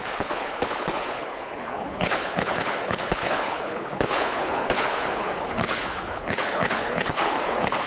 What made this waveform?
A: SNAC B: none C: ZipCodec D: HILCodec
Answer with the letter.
D